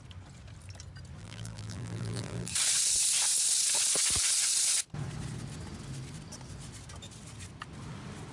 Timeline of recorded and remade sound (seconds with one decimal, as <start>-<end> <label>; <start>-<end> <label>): 0.0-1.2 recorded; 1.2-2.5 remade; 2.5-8.3 recorded